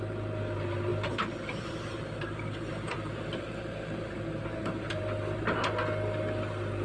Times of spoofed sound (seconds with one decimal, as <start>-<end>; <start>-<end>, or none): 0.9-5.0